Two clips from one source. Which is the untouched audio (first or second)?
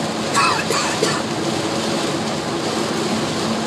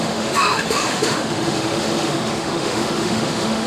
first